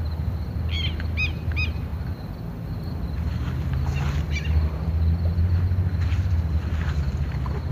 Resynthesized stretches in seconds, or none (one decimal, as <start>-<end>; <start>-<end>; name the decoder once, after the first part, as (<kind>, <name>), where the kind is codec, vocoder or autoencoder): none